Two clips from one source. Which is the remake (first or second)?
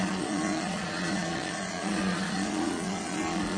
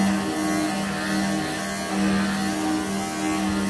first